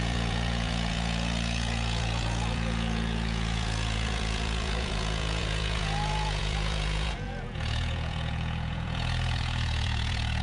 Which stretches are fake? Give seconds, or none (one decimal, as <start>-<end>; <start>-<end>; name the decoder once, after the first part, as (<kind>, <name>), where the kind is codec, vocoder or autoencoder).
0.0-10.4 (vocoder, Vocos)